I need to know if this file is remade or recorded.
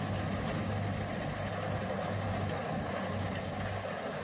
recorded